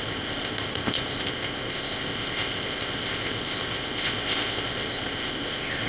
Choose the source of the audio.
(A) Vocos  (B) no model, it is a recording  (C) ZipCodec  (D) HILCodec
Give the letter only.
C